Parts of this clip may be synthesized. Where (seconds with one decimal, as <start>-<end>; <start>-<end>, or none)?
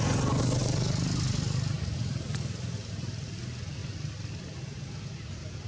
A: none